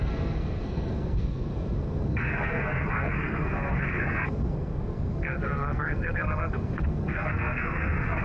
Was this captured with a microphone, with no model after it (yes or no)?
no